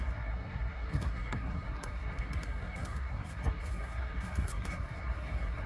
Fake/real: fake